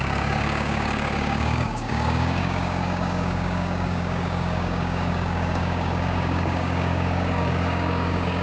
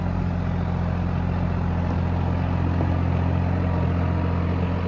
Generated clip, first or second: first